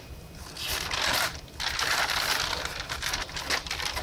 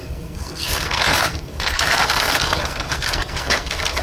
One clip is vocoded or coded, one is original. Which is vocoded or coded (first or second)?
second